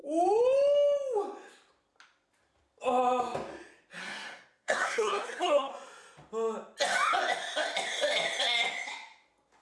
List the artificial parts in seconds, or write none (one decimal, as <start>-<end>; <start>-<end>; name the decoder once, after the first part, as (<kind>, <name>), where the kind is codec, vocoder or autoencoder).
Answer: 4.0-5.7 (codec, SNAC)